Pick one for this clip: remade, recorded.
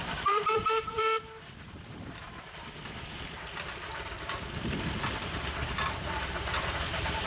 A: remade